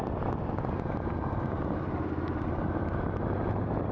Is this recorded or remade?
recorded